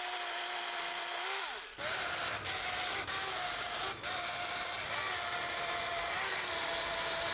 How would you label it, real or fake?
real